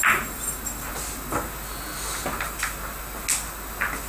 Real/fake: real